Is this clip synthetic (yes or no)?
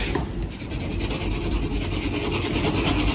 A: no